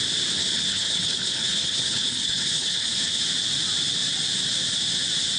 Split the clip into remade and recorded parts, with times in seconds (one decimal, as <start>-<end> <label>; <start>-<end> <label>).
0.0-0.4 recorded; 0.4-3.2 remade; 3.2-5.4 recorded